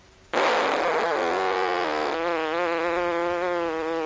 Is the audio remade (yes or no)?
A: no